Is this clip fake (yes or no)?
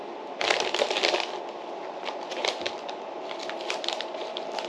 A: no